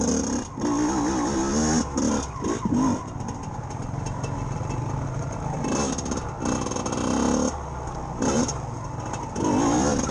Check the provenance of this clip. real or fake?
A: real